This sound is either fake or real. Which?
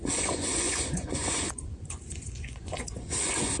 fake